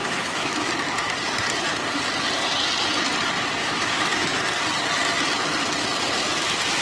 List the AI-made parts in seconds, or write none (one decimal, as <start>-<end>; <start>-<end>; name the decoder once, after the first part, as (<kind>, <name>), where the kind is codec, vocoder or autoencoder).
0.0-0.7 (autoencoder, DAC-VAE); 3.6-4.4